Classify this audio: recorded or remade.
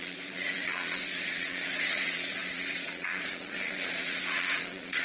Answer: remade